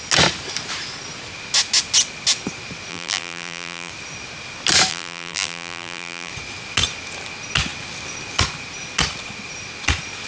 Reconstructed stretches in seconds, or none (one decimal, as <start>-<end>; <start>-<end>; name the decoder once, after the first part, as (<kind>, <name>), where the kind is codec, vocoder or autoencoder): 2.9-3.9 (vocoder, BigVGAN v2); 4.9-6.3